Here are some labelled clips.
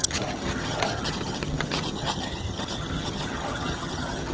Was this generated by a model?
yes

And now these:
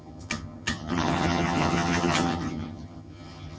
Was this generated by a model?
yes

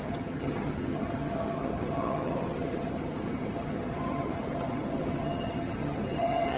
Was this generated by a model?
yes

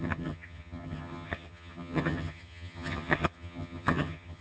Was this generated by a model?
yes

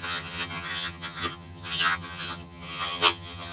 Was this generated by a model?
yes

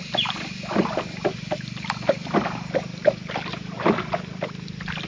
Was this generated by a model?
no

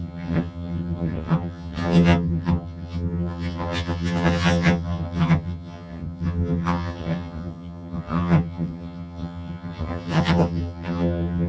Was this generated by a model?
yes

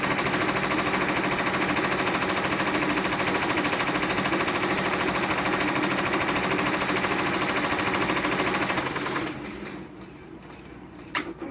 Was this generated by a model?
no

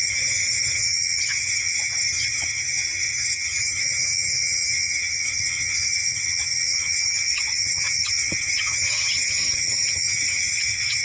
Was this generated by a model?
yes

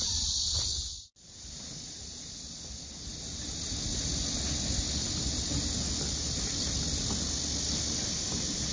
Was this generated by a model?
no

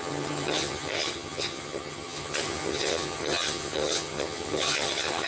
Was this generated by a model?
yes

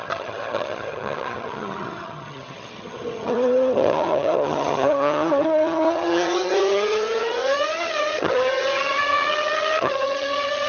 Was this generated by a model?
yes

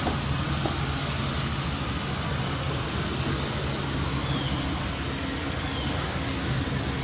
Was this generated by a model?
no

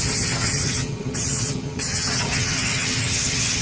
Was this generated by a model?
yes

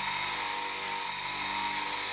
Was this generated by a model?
no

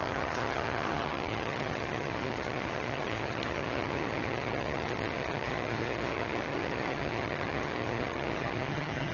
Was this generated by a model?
yes